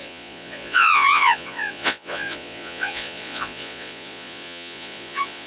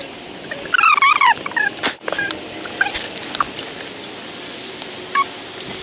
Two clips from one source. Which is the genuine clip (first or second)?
second